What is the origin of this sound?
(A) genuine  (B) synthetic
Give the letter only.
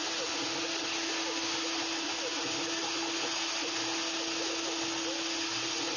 A